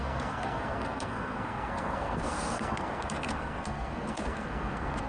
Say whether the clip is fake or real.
fake